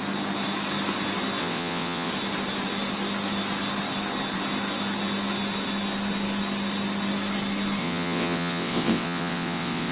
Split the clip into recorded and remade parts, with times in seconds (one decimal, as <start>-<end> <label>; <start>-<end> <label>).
0.0-1.4 recorded; 1.4-2.1 remade; 2.1-7.8 recorded; 7.8-9.9 remade